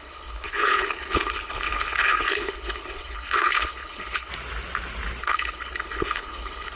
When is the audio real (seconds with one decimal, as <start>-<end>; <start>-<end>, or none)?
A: 4.3-5.2